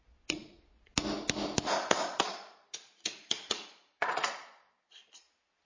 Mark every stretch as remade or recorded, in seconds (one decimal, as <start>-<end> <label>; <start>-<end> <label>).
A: 0.0-0.9 remade; 0.9-1.9 recorded; 1.9-5.7 remade